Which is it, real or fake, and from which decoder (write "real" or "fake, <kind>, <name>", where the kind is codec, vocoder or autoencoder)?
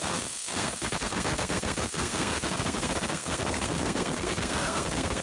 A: fake, codec, SNAC